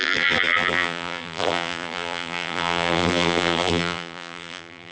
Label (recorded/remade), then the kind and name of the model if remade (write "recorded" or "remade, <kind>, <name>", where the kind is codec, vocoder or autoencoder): remade, vocoder, BigVGAN v2